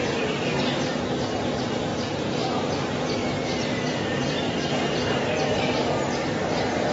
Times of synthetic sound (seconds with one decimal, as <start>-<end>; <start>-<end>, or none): none